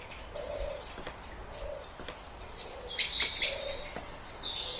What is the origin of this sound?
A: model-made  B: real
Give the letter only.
B